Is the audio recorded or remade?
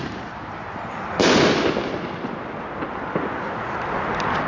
recorded